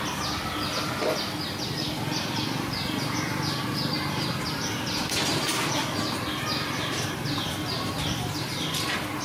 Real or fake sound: real